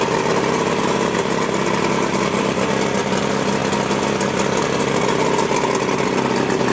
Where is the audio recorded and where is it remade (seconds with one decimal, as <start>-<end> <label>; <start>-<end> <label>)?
0.0-6.7 recorded